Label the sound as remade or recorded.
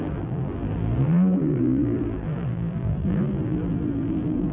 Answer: remade